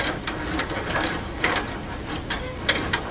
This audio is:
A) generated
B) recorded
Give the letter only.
B